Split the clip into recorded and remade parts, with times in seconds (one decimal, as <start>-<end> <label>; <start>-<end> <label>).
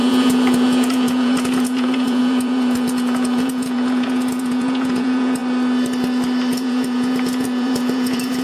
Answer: 0.0-5.4 remade; 5.4-6.5 recorded; 6.5-8.4 remade